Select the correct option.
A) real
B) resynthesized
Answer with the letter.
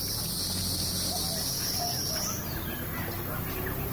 A